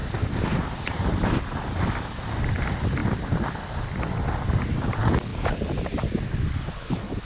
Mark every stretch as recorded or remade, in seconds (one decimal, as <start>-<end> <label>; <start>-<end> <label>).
0.0-3.0 recorded; 3.0-4.0 remade; 4.0-7.2 recorded